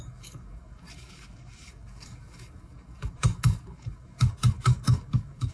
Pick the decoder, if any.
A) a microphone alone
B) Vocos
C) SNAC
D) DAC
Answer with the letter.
D